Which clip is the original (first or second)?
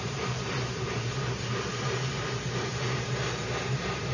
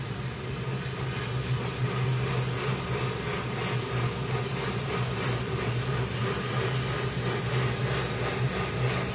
second